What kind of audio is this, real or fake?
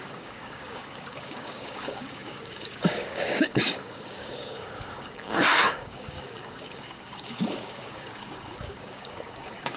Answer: fake